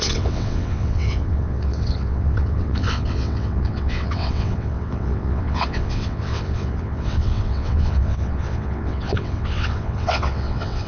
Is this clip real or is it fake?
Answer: fake